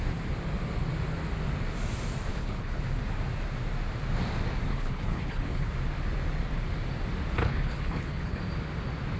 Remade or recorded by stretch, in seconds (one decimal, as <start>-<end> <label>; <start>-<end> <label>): 0.0-2.3 recorded; 2.3-3.0 remade; 3.0-4.7 recorded; 4.7-5.7 remade; 5.7-7.4 recorded; 7.4-8.4 remade; 8.4-9.2 recorded